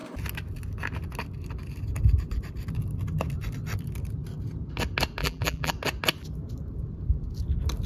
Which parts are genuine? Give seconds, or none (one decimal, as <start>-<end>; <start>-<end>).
0.0-5.2; 5.7-7.9